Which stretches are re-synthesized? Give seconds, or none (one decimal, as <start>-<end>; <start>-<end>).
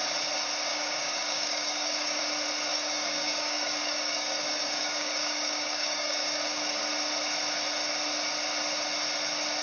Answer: 0.7-2.2; 2.7-6.8